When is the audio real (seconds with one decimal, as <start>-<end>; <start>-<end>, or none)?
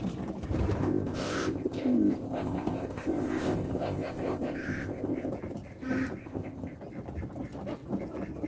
0.0-0.8; 5.3-6.2; 6.8-8.5